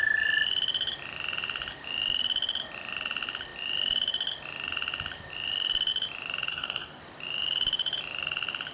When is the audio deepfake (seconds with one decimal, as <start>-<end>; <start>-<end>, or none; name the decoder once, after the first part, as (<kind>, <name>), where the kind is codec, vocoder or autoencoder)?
6.5-7.0 (codec, DAC)

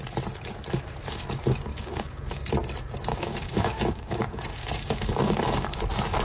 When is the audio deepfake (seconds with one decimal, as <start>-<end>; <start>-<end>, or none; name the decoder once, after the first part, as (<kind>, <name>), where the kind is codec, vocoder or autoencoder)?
1.7-2.5 (codec, DAC); 3.1-5.8

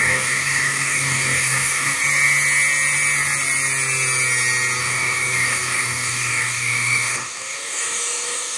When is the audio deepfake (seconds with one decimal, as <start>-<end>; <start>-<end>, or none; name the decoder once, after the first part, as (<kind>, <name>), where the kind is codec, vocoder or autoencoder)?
0.0-2.0 (codec, DAC); 4.8-8.6

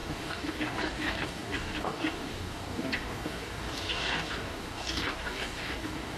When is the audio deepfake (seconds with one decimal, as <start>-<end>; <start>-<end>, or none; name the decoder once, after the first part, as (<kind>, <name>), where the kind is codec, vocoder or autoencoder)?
0.0-6.2 (codec, DAC)

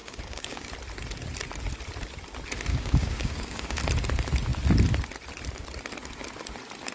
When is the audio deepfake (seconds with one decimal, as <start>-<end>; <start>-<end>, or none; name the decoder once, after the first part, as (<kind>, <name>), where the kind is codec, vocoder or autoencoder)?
0.0-0.7 (codec, DAC); 2.7-3.8

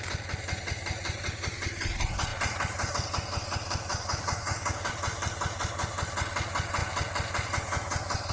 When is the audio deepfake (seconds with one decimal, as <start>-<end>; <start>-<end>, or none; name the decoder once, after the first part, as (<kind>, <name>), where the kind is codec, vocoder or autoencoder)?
3.9-4.9 (codec, DAC)

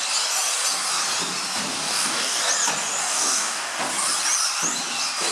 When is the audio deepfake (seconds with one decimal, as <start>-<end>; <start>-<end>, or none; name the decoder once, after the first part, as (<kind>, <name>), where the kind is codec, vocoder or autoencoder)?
1.8-2.4 (codec, DAC); 3.0-3.8

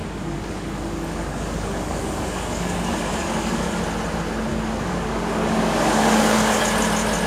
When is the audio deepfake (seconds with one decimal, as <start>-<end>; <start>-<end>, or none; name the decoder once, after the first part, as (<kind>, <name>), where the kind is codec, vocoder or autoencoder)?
0.0-3.8 (codec, DAC); 4.5-6.6